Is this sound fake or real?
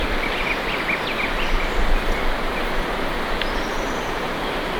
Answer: real